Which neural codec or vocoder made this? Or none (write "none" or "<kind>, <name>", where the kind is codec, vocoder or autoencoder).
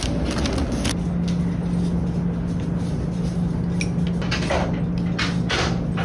none